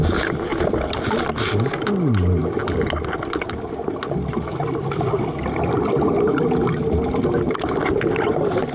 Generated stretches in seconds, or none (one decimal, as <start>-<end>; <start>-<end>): none